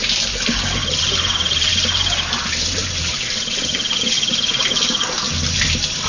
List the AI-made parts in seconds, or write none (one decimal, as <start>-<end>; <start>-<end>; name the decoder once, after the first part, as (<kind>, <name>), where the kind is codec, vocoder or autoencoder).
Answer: none